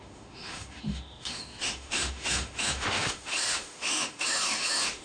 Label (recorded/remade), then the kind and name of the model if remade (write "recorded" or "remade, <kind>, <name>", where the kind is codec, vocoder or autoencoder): remade, autoencoder, DAC-VAE